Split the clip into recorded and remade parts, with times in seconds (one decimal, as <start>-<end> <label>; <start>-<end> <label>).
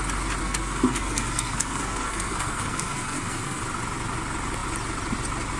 0.0-0.4 recorded; 0.4-3.6 remade; 3.6-5.6 recorded